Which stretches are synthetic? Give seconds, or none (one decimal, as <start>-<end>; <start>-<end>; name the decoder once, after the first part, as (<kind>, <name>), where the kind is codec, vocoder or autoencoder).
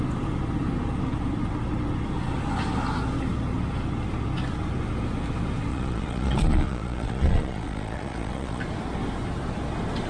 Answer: 5.7-8.6 (vocoder, Vocos)